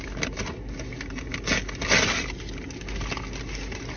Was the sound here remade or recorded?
recorded